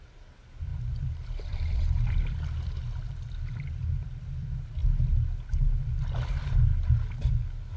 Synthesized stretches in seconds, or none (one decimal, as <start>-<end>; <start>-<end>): 0.0-4.8; 5.9-6.7